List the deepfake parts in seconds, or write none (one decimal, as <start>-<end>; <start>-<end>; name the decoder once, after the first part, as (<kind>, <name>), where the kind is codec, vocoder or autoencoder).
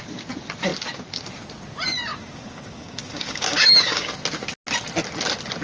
2.1-4.1 (codec, DAC)